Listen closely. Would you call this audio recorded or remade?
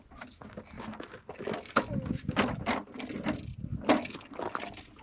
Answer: recorded